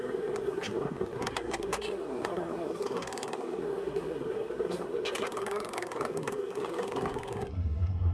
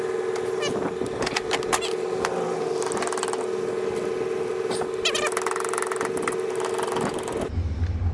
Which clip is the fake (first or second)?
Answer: first